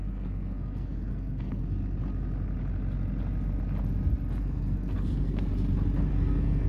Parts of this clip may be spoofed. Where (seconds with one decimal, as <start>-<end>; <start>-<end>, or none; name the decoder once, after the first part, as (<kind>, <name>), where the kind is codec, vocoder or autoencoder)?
0.0-1.6 (codec, SNAC); 4.4-5.5; 6.1-6.7